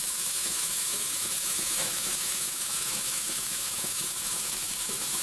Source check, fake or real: fake